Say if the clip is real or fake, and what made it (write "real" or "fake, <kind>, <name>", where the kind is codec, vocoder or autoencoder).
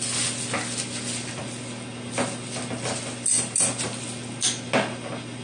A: real